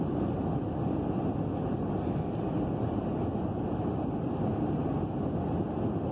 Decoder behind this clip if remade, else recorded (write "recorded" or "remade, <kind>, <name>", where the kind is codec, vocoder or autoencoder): recorded